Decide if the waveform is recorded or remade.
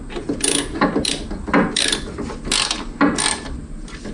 recorded